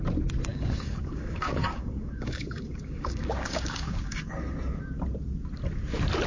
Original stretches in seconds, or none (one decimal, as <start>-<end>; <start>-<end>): 0.0-0.5; 4.3-6.3